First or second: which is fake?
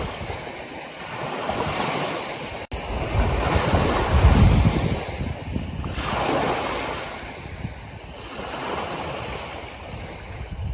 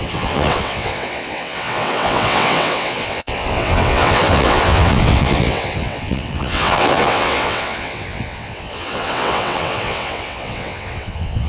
second